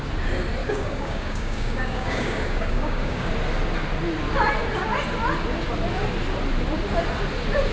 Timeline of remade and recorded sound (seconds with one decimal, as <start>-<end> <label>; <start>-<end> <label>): 0.0-0.6 recorded; 0.6-3.3 remade; 3.3-7.7 recorded